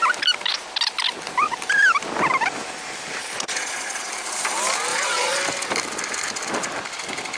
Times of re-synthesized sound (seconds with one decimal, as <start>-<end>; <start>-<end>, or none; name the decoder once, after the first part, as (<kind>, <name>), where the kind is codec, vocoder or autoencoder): 3.2-4.1 (vocoder, Vocos); 4.9-5.4